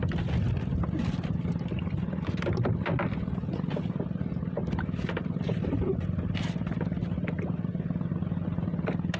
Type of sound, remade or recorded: recorded